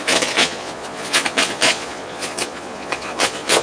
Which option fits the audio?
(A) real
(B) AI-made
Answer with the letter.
B